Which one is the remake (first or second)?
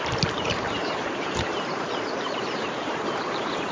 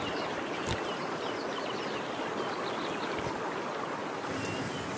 first